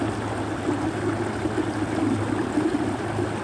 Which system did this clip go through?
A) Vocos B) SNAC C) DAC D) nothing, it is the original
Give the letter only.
D